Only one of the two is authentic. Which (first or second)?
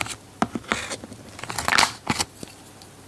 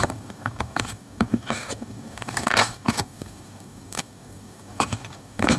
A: first